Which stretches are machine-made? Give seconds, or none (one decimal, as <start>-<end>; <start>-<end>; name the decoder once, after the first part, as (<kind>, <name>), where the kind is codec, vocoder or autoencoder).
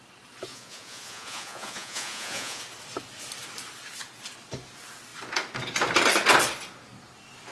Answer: 0.5-2.6 (vocoder, Vocos)